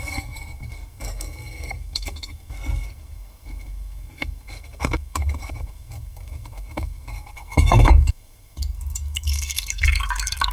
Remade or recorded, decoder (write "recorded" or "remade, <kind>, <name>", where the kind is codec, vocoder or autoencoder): remade, codec, SNAC